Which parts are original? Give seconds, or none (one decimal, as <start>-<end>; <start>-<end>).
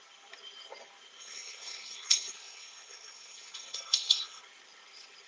0.0-1.2; 4.4-5.3